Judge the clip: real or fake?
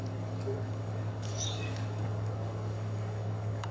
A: fake